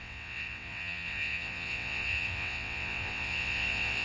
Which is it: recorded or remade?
remade